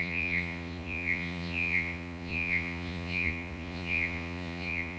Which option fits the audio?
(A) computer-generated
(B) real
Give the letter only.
A